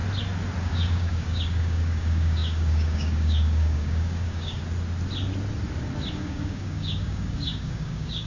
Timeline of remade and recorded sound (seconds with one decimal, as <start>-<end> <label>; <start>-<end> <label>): 0.0-0.6 recorded; 0.6-4.6 remade; 4.6-6.1 recorded; 6.1-8.3 remade